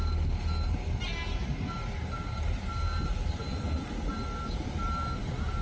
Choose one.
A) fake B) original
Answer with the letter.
B